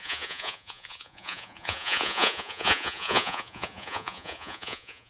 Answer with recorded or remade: remade